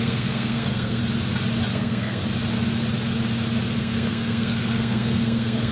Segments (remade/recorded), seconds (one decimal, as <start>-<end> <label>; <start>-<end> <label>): 0.0-1.0 remade; 1.0-1.7 recorded; 1.7-2.2 remade; 2.2-3.8 recorded; 3.8-5.7 remade